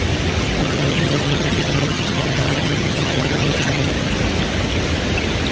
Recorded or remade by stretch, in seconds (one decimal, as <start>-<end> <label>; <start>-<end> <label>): 0.0-0.6 recorded; 0.6-3.9 remade; 3.9-5.5 recorded